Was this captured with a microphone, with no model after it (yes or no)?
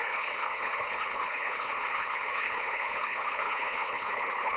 no